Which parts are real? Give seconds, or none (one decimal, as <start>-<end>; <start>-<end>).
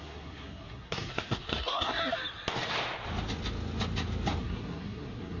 2.0-4.4